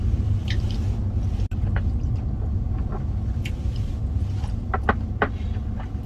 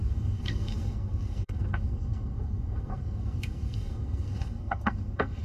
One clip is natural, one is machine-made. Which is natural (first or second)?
first